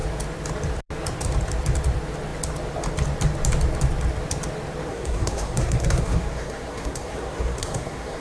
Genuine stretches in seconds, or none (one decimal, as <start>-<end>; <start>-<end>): 0.0-4.9